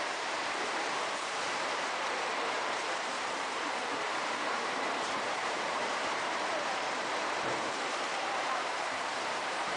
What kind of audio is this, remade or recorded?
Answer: remade